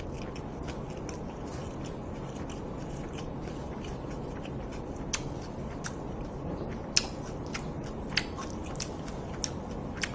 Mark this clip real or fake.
real